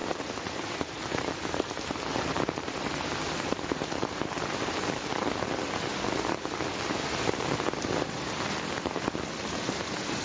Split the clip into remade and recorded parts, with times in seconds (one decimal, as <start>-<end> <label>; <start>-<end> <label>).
0.0-4.3 remade; 4.3-10.2 recorded